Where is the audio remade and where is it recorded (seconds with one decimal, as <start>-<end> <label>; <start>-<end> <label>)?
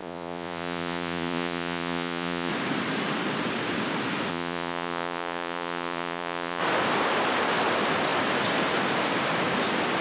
0.0-2.5 remade; 2.5-4.3 recorded; 4.3-6.6 remade; 6.6-10.0 recorded